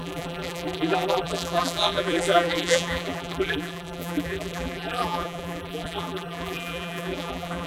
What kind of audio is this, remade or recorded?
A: remade